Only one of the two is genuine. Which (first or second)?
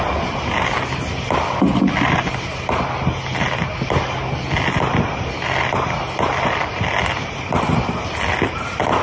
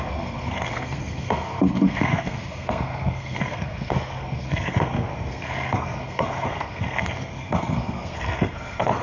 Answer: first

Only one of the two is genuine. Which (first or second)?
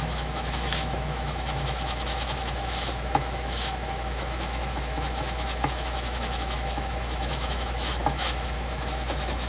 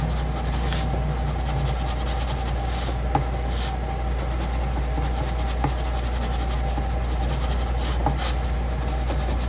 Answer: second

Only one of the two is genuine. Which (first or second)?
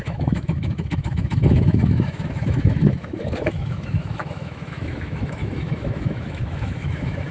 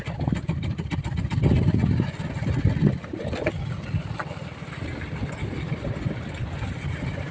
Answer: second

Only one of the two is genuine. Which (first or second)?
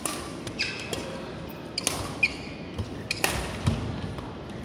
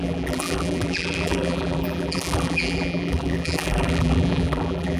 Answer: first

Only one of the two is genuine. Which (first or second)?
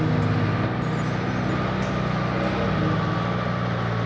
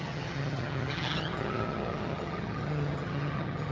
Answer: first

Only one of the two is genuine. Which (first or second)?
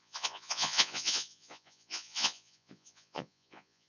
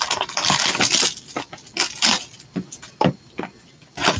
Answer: second